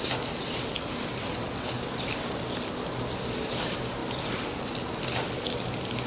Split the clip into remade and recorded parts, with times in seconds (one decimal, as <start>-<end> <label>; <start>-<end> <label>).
0.0-1.2 recorded; 1.2-1.7 remade; 1.7-6.1 recorded